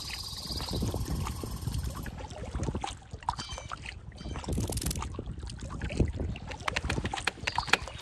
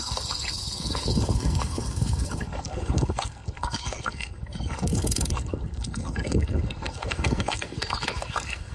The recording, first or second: first